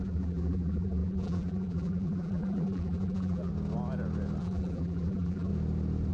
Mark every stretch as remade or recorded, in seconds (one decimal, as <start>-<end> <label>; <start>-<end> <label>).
0.0-3.5 remade; 3.5-4.4 recorded; 4.4-5.5 remade; 5.5-6.1 recorded